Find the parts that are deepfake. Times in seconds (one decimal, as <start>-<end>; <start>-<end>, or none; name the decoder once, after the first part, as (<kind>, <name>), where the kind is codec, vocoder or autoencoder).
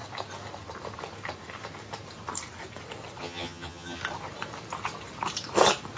3.2-4.0 (vocoder, HiFi-GAN)